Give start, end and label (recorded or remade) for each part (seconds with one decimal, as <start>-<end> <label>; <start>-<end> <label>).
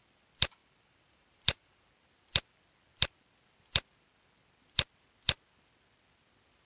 0.0-0.6 recorded; 0.6-1.8 remade; 1.8-6.7 recorded